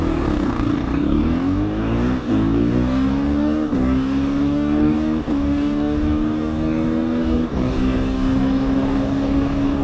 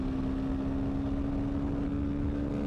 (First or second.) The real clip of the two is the second